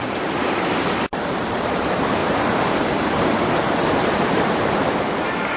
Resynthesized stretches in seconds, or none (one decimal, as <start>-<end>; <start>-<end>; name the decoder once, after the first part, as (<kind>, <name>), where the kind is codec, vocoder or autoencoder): 0.0-5.6 (vocoder, BigVGAN v2)